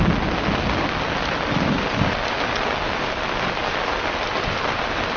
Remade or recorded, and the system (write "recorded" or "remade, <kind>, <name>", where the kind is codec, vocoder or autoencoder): recorded